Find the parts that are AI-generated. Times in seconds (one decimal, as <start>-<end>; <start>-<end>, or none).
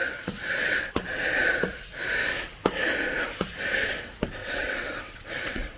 0.0-0.8; 4.4-5.8